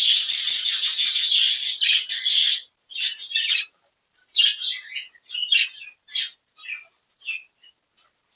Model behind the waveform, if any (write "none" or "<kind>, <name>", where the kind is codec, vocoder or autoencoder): vocoder, BigVGAN v2